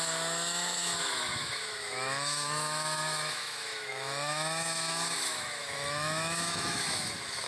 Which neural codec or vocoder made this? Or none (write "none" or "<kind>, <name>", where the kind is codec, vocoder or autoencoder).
autoencoder, DAC-VAE